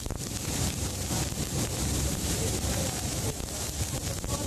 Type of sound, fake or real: fake